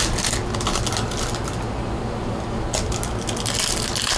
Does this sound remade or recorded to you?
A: recorded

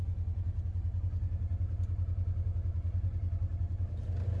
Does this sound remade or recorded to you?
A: recorded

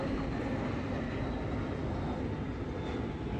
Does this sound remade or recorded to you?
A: recorded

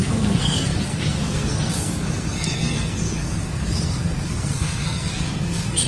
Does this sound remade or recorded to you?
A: remade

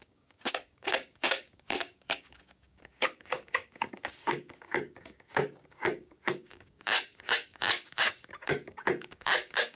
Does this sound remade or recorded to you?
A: remade